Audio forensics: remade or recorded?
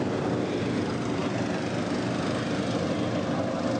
recorded